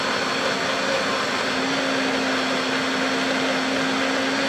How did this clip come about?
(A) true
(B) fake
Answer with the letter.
A